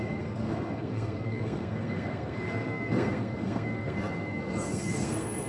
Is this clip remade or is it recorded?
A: remade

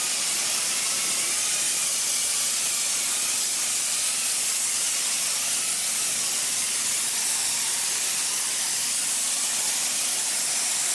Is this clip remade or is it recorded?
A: recorded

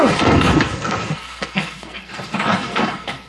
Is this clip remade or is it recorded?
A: remade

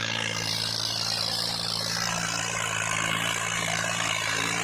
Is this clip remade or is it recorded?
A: recorded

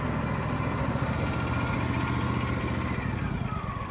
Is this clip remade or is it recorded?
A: recorded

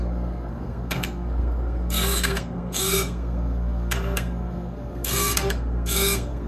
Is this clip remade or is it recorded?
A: remade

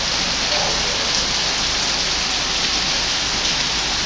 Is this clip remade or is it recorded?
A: recorded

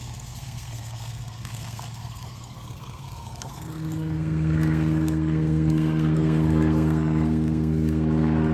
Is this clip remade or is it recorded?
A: remade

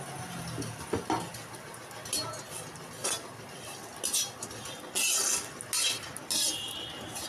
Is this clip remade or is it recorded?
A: recorded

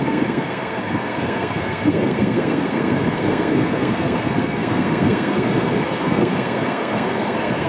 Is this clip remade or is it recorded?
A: remade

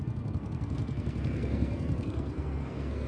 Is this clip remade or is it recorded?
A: remade